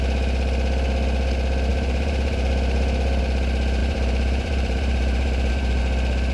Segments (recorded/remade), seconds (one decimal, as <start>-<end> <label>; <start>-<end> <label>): 0.0-1.7 recorded; 1.7-3.2 remade; 3.2-3.8 recorded; 3.8-5.8 remade; 5.8-6.3 recorded